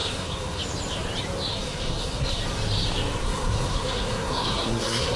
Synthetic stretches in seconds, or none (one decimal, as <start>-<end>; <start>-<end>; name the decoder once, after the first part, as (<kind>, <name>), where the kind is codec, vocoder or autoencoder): 0.0-0.6 (codec, SNAC); 1.5-2.4; 3.2-5.2